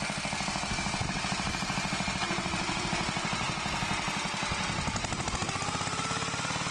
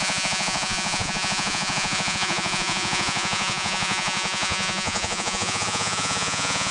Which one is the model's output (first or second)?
second